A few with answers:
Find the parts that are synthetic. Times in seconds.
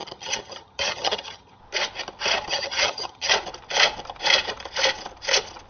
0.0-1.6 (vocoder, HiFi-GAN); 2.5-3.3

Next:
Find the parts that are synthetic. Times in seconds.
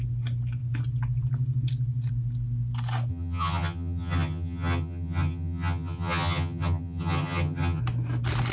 3.1-7.8 (vocoder, HiFi-GAN)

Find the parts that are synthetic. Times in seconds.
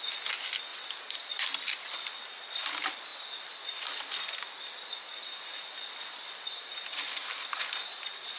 none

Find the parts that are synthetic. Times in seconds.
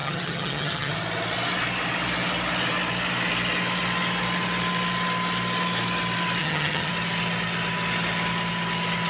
0.0-0.9 (vocoder, HiFi-GAN); 6.4-6.9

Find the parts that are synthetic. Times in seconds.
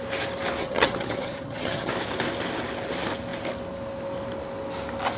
0.6-1.9 (vocoder, HiFi-GAN)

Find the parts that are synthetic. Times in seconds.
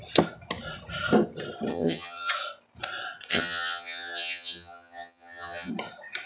1.7-2.3 (vocoder, HiFi-GAN); 3.3-5.7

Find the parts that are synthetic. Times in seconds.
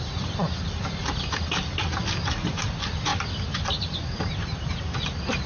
none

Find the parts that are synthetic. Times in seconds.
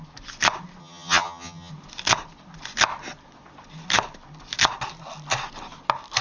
0.8-1.7 (vocoder, HiFi-GAN)